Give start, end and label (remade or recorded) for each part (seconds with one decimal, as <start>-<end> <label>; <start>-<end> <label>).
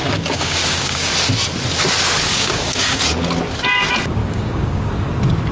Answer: 0.0-1.1 remade; 1.1-2.3 recorded; 2.3-3.0 remade; 3.0-4.2 recorded; 4.2-4.9 remade; 4.9-5.5 recorded